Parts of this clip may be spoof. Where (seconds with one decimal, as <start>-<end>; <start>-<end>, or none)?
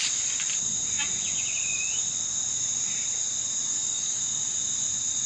3.7-4.2